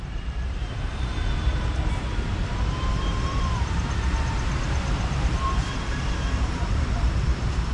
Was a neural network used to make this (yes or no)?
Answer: yes